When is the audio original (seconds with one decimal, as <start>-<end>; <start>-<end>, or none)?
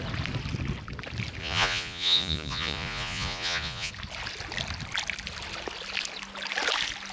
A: 0.0-1.4; 3.9-7.1